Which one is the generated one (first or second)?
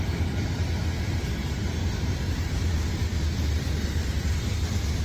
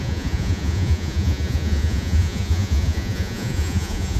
second